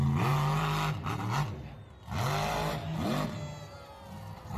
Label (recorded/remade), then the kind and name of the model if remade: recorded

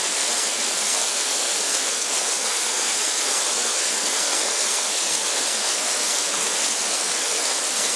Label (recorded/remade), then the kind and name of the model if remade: remade, codec, SNAC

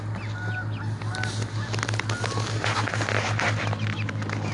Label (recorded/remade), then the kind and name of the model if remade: recorded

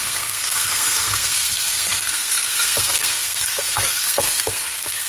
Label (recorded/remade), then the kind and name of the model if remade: remade, codec, SNAC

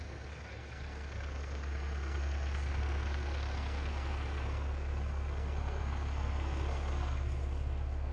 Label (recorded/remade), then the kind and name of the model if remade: remade, codec, SNAC